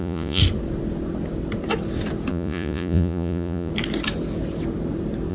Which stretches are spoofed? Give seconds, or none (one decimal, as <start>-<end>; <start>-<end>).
0.0-0.4; 2.3-3.7